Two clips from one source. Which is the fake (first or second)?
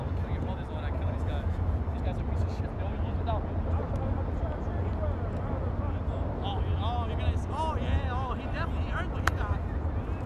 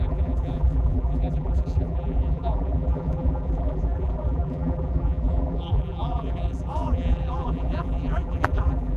second